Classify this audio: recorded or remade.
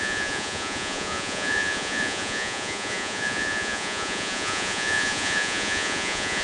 remade